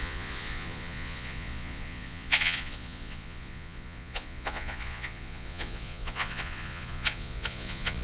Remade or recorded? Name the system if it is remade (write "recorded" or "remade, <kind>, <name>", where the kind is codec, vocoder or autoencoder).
remade, vocoder, Vocos